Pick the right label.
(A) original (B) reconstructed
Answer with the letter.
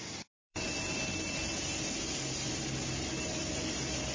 B